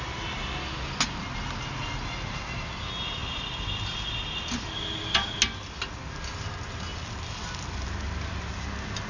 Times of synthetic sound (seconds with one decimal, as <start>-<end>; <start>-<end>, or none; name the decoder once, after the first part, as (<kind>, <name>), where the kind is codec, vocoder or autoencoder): none